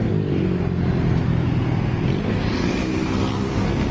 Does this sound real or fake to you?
real